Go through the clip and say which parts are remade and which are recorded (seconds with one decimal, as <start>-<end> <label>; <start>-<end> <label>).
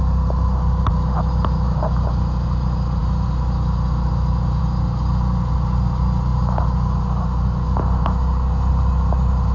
0.0-9.5 recorded